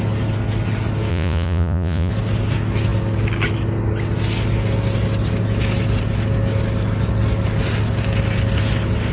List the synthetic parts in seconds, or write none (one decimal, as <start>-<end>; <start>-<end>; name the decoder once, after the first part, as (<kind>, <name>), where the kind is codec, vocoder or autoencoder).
1.1-2.1 (vocoder, Vocos)